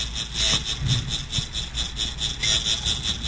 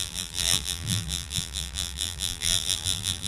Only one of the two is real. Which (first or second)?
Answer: first